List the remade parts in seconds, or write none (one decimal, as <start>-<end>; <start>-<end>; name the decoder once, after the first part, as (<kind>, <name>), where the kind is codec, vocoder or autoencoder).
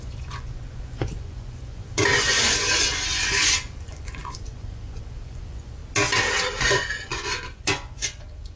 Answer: 0.0-5.8 (vocoder, Vocos); 6.6-8.6